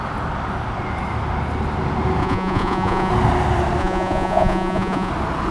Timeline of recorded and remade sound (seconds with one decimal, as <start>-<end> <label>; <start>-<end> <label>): 0.0-2.2 recorded; 2.2-3.1 remade; 3.1-3.8 recorded; 3.8-5.1 remade; 5.1-5.5 recorded